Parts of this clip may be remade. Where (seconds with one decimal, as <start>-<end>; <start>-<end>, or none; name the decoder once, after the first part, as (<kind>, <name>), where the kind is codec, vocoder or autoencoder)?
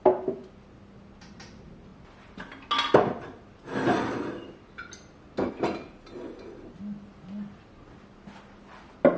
none